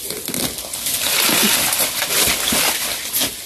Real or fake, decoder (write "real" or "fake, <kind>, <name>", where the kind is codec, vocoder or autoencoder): real